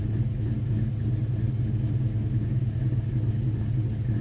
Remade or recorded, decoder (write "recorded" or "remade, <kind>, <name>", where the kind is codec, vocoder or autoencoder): recorded